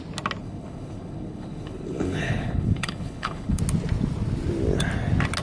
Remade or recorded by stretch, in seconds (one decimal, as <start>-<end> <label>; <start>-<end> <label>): 0.0-0.4 recorded; 0.4-3.6 remade; 3.6-5.4 recorded